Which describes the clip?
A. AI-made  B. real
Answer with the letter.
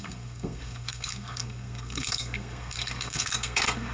A